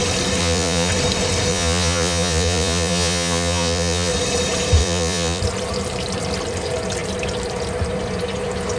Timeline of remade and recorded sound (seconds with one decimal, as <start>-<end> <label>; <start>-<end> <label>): 0.0-0.4 recorded; 0.4-0.9 remade; 0.9-1.5 recorded; 1.5-4.1 remade; 4.1-4.8 recorded; 4.8-5.4 remade; 5.4-8.8 recorded